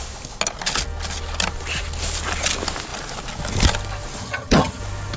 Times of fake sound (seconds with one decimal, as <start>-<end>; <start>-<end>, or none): 4.2-4.8

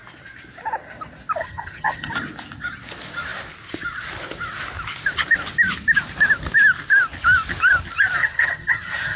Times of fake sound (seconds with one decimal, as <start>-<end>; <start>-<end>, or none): 1.4-2.1; 8.2-9.2

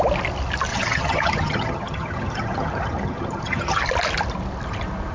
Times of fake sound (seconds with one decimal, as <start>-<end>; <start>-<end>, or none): 0.7-3.8